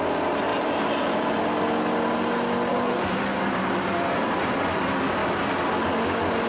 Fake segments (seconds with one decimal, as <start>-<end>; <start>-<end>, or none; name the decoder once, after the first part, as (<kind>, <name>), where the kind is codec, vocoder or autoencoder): 0.5-1.4 (vocoder, BigVGAN v2); 2.7-4.8